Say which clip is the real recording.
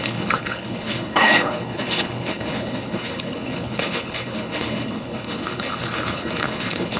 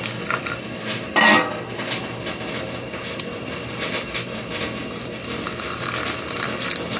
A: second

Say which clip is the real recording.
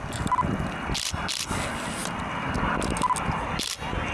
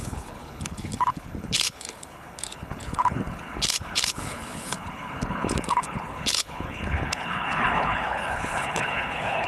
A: first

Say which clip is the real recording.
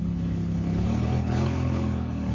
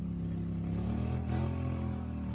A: second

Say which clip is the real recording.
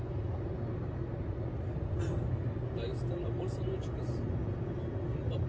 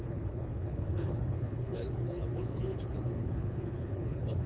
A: first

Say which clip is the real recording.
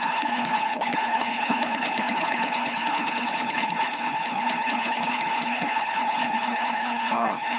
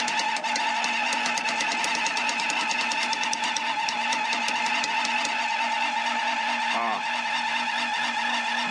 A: second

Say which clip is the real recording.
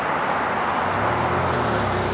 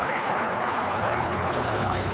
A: first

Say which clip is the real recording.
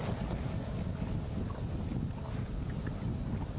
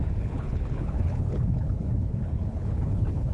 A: first